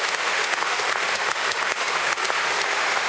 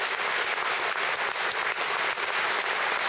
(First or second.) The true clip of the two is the second